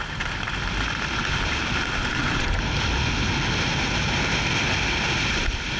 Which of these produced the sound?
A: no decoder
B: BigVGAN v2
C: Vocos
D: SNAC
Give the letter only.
A